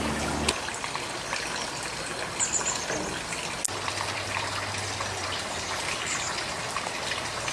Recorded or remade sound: recorded